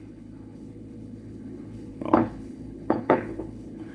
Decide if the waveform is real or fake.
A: fake